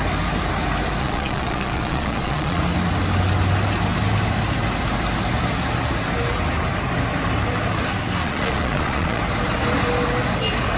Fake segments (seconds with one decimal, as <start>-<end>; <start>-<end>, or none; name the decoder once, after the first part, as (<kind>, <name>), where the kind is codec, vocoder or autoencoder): 1.0-2.6 (vocoder, Vocos); 8.2-9.2